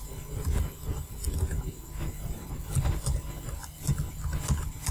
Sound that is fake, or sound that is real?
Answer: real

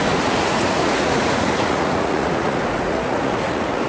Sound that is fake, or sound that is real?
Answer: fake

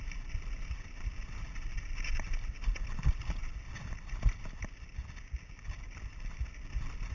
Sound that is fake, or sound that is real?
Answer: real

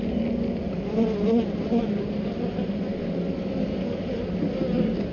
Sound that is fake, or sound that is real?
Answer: real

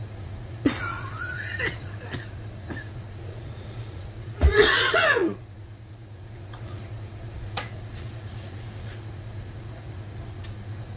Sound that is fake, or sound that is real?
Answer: fake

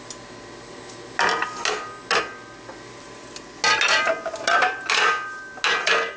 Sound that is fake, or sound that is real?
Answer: real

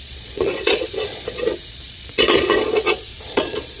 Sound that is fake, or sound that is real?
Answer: fake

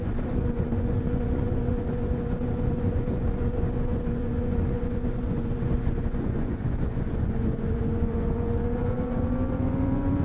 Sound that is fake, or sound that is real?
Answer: fake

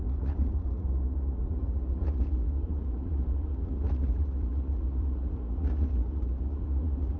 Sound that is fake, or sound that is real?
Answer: fake